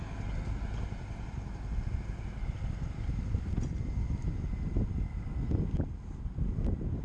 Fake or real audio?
real